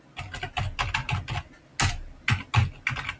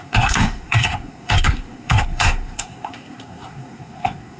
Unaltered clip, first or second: first